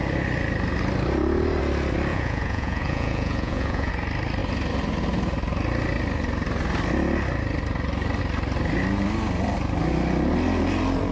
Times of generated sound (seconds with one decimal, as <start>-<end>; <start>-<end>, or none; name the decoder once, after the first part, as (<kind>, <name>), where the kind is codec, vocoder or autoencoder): 2.1-3.9 (vocoder, Vocos)